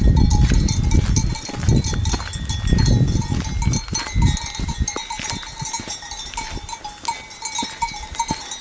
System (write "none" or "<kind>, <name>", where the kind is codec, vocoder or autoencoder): none